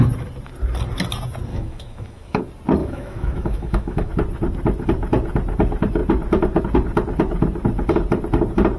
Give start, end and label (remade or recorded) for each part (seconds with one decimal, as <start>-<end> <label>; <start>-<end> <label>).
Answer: 0.0-1.5 recorded; 1.5-2.4 remade; 2.4-2.8 recorded; 2.8-4.1 remade; 4.1-8.8 recorded